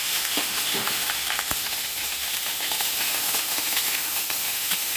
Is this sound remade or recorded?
remade